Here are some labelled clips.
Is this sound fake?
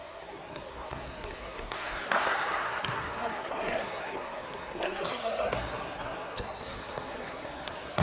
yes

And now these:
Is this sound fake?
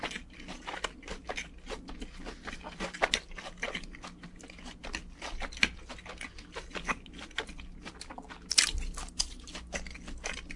no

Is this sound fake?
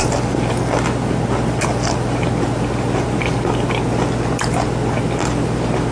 no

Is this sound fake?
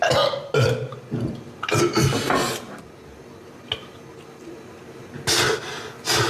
no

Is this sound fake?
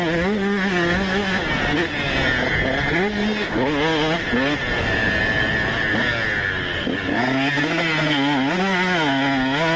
no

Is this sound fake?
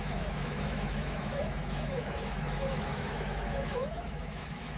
yes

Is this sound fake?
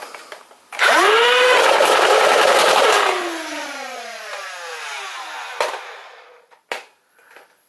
no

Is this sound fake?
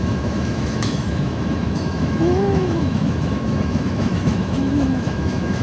yes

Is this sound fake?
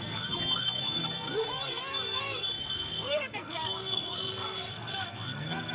yes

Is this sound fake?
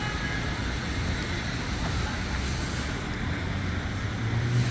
no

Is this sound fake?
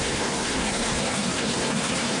yes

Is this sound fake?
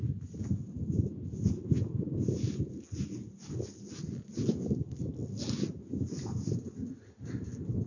no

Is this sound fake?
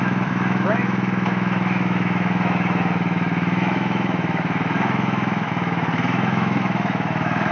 yes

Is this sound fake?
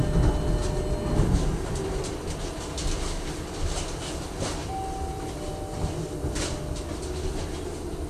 no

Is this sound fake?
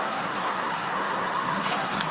yes